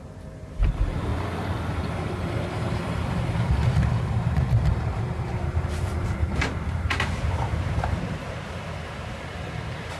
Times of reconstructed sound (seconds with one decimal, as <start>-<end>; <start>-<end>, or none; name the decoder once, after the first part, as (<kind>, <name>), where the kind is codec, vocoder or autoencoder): 0.0-1.1 (vocoder, BigVGAN v2); 1.7-10.0